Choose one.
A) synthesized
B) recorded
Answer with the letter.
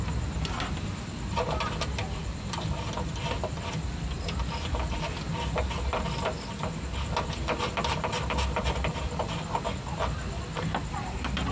B